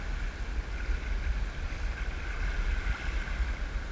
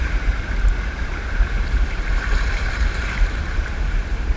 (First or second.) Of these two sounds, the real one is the first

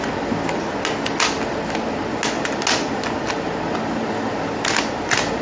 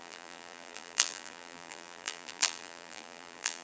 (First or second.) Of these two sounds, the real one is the first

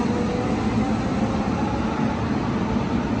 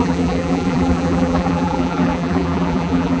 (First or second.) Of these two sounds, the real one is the first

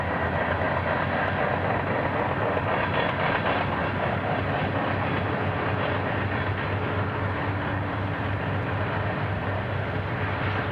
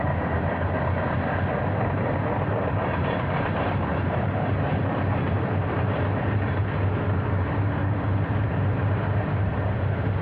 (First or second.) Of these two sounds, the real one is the first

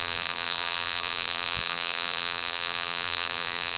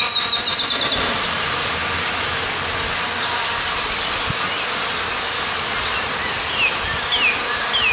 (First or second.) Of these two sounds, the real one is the second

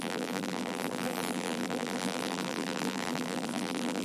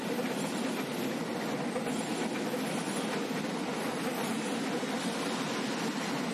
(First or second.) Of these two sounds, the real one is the second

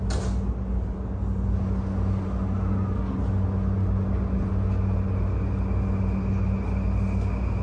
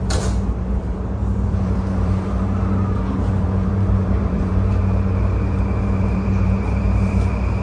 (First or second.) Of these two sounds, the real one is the first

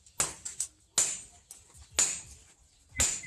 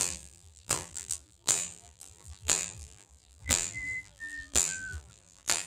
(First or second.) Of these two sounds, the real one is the first